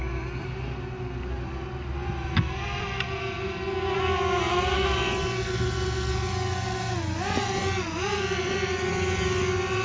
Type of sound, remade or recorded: recorded